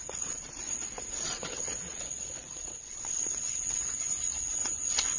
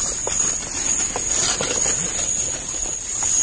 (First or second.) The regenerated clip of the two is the first